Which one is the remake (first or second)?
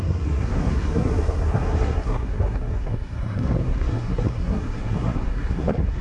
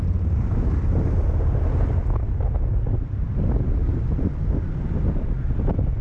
first